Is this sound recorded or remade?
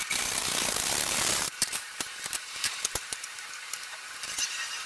remade